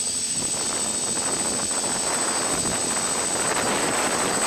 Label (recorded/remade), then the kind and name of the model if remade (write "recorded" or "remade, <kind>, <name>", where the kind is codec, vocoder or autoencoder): recorded